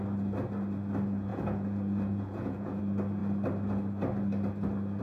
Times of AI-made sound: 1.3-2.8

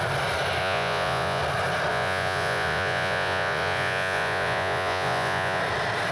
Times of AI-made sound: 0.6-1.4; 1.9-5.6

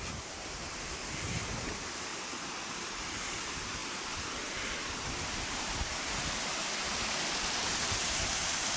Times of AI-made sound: 0.0-2.1; 2.8-3.8; 4.8-6.6; 7.6-8.8

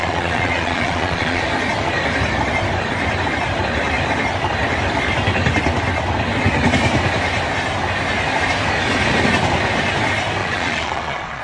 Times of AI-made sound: 0.0-1.4; 10.4-11.4

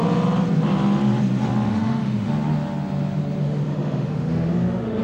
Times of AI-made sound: 1.7-2.3; 3.4-5.0

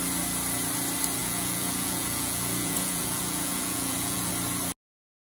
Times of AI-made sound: 1.2-4.3

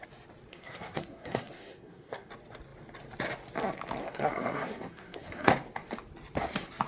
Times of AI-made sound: 0.5-2.3; 4.0-5.5